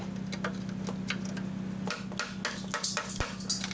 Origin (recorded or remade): recorded